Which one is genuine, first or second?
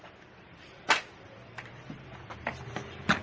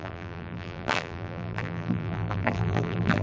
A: first